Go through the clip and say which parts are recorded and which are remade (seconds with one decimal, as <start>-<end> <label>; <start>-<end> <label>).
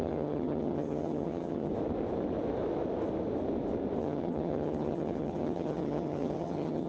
0.0-1.7 remade; 1.7-4.0 recorded; 4.0-6.9 remade